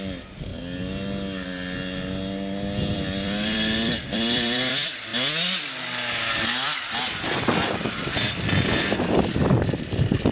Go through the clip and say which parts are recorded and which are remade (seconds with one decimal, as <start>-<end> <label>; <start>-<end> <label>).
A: 0.0-0.5 remade; 0.5-2.9 recorded; 2.9-5.1 remade; 5.1-6.4 recorded; 6.4-10.3 remade